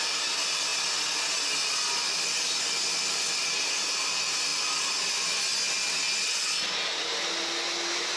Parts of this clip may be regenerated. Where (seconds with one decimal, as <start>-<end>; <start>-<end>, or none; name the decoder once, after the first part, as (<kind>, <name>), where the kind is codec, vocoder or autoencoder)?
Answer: none